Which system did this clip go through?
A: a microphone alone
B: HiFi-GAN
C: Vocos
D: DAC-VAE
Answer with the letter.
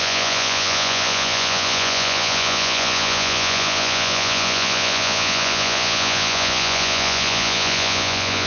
C